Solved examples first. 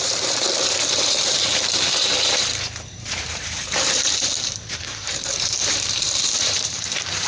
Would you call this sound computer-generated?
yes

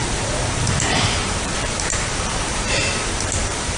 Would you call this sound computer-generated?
yes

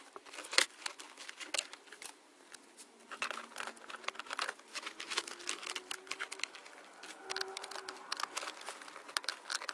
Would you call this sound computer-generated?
no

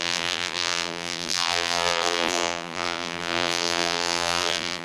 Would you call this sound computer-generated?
yes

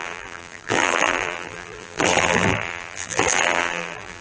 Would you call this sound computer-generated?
yes